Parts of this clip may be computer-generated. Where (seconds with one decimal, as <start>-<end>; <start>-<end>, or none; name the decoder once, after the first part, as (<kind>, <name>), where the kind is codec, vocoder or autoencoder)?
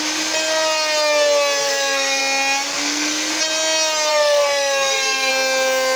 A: 1.6-2.2 (codec, SNAC); 2.7-3.3; 4.1-5.3